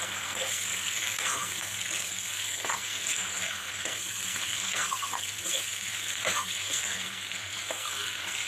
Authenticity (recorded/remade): remade